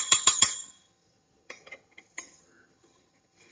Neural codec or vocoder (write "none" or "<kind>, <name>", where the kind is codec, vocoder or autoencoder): vocoder, HiFi-GAN